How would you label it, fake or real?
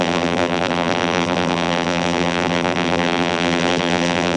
fake